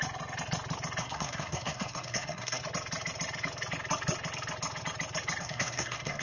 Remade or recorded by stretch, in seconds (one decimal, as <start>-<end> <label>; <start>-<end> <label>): 0.0-1.0 recorded; 1.0-2.6 remade; 2.6-5.4 recorded; 5.4-6.2 remade